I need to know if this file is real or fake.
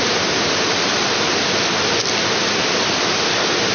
real